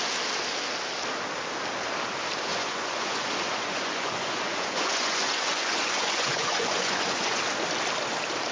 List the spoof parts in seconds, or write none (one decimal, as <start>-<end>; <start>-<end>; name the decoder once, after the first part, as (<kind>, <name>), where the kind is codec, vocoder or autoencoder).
2.5-7.4 (vocoder, Vocos)

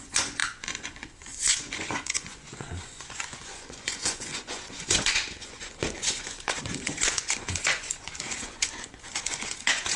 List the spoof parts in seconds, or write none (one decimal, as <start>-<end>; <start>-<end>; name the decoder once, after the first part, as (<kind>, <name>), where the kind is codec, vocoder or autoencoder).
0.0-10.0 (vocoder, Vocos)

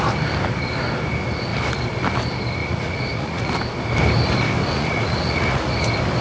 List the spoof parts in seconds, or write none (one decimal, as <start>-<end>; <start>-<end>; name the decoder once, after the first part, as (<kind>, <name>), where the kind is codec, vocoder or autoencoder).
2.6-3.5 (vocoder, Vocos); 4.6-5.7

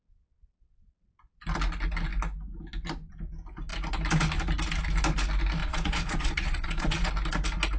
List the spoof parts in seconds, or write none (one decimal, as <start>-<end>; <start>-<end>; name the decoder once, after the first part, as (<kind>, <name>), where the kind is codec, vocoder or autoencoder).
5.6-7.1 (vocoder, Vocos)

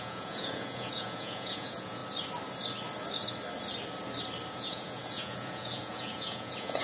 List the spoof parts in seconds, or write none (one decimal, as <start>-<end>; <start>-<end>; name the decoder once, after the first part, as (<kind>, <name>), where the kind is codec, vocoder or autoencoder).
0.0-2.0 (vocoder, Vocos); 4.5-6.8

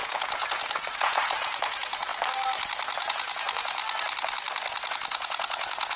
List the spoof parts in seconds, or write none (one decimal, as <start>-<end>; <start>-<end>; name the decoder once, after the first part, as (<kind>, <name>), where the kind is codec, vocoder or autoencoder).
0.0-2.1 (vocoder, Vocos); 3.1-3.8; 4.9-6.0